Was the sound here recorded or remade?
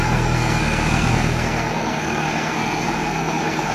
remade